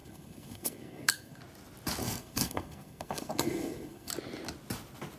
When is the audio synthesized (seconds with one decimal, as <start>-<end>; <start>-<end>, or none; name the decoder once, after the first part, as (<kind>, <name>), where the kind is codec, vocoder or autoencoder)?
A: 0.0-1.4 (codec, SNAC); 2.0-4.1